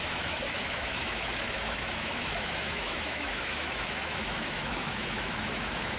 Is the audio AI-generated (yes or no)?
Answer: yes